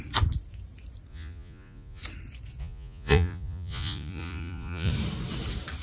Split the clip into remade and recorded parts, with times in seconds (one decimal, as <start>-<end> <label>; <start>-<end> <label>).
0.0-1.1 recorded; 1.1-2.0 remade; 2.0-2.6 recorded; 2.6-4.9 remade; 4.9-5.8 recorded

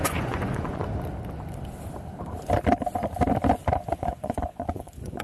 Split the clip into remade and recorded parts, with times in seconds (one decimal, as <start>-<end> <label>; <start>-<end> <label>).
0.0-0.9 remade; 0.9-3.9 recorded; 3.9-5.2 remade

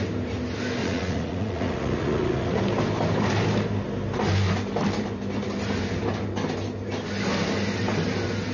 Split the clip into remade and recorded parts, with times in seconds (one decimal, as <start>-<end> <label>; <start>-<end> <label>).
0.0-0.8 recorded; 0.8-2.6 remade; 2.6-8.5 recorded

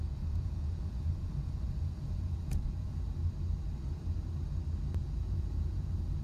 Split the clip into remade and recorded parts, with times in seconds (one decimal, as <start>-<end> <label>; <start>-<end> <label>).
0.0-3.1 remade; 3.1-5.0 recorded; 5.0-6.2 remade

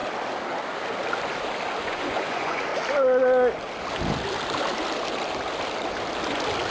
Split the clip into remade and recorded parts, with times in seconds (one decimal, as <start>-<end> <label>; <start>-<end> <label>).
0.0-1.8 recorded; 1.8-2.7 remade; 2.7-6.7 recorded

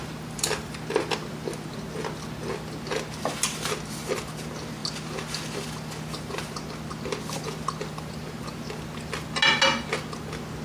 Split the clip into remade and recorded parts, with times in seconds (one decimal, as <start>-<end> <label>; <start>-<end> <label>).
0.0-10.6 recorded